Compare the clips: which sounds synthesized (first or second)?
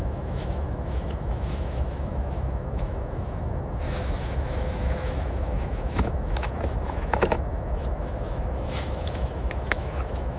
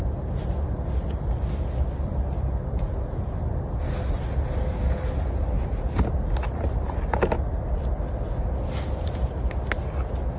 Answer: first